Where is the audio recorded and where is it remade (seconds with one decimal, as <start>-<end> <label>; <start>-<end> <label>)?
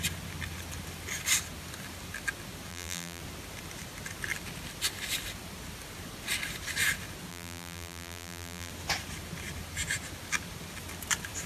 0.0-2.7 recorded; 2.7-3.2 remade; 3.2-7.3 recorded; 7.3-8.7 remade; 8.7-11.5 recorded